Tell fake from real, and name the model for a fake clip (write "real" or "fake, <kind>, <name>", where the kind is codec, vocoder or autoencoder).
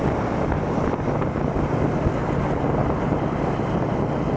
real